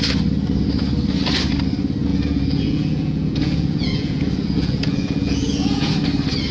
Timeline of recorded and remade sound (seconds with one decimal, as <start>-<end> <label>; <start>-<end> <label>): 0.0-2.1 recorded; 2.1-5.9 remade; 5.9-6.5 recorded

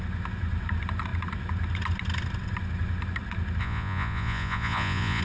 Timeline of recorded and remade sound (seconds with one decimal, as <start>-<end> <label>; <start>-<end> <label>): 0.0-3.6 recorded; 3.6-5.2 remade

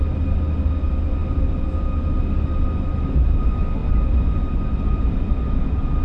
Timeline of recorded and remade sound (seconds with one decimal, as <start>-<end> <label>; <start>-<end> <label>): 0.0-6.0 recorded